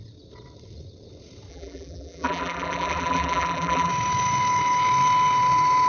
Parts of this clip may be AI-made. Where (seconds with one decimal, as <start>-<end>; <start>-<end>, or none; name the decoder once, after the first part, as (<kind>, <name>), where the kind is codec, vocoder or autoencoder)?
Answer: 1.5-3.9 (vocoder, BigVGAN v2)